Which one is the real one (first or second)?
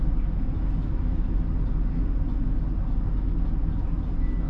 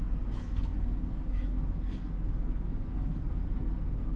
first